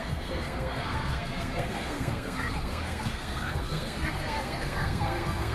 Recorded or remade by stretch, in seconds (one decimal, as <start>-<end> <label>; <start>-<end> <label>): 0.0-5.5 remade